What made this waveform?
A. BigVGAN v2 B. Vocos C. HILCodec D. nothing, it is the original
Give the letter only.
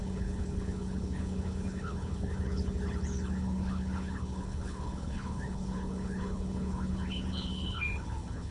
C